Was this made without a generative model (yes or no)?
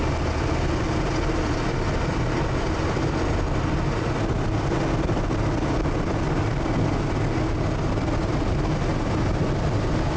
yes